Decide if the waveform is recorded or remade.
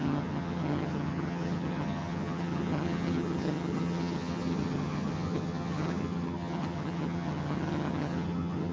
remade